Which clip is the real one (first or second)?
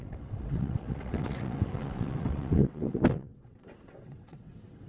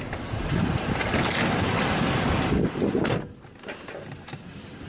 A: second